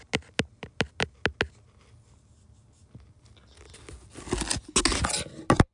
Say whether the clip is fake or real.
real